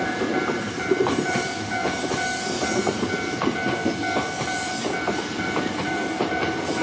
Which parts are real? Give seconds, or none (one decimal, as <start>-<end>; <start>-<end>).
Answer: 3.8-4.4